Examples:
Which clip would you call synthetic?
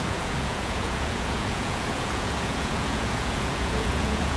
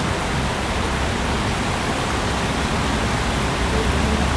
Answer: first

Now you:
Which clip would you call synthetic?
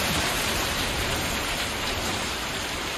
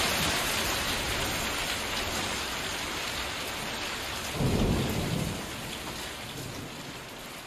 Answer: first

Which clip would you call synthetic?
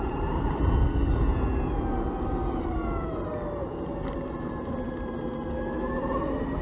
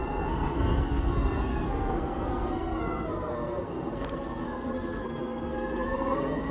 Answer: second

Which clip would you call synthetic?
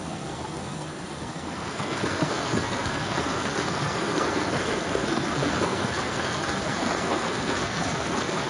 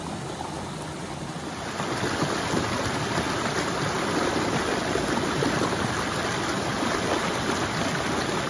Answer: first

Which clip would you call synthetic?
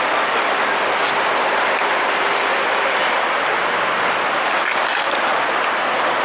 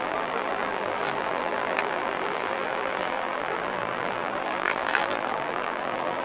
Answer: second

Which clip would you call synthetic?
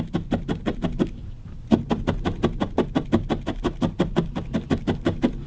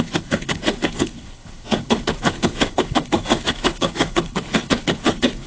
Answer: second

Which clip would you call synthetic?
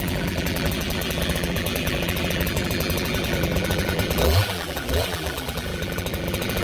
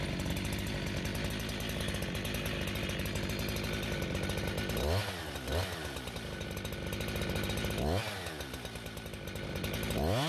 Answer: first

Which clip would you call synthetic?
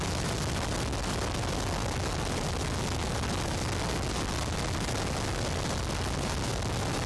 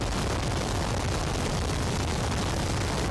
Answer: second